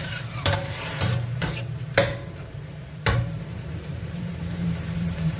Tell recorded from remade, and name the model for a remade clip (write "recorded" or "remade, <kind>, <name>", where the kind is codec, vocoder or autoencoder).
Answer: remade, vocoder, BigVGAN v2